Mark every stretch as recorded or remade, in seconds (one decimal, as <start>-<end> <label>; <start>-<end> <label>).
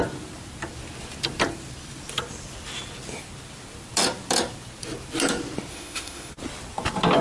0.0-5.7 recorded; 5.7-6.3 remade; 6.3-7.2 recorded